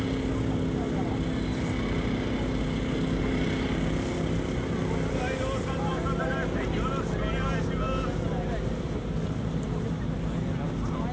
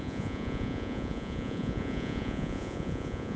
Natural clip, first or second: first